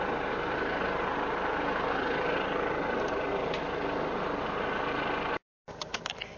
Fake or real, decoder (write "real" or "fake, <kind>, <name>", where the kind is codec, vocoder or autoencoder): real